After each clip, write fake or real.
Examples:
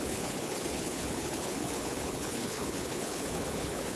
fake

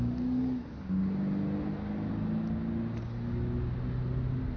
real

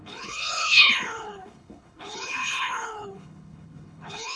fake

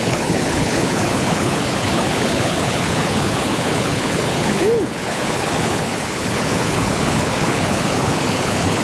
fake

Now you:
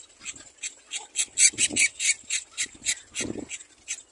real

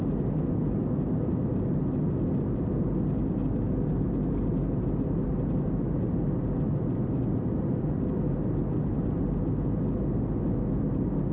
real